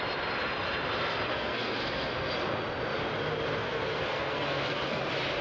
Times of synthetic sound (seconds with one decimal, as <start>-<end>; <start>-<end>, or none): 1.3-2.3; 3.6-5.0